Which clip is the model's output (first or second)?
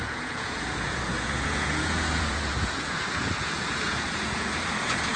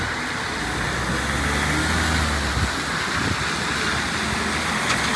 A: first